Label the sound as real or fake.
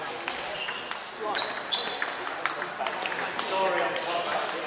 real